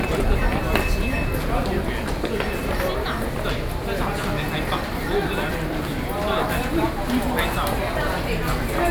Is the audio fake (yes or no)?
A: no